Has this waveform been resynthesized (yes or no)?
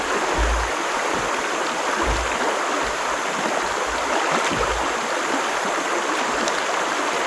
no